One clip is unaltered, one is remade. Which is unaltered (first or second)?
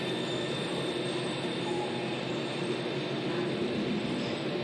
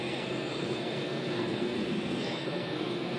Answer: first